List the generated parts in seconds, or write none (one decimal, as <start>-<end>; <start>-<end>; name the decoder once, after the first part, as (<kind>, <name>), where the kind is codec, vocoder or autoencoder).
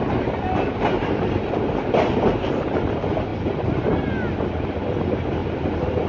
none